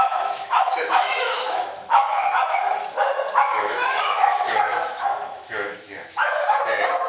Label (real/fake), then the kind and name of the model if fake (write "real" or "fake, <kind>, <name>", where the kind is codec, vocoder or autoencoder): fake, autoencoder, DAC-VAE